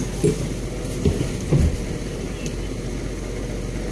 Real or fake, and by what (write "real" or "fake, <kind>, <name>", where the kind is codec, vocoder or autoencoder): real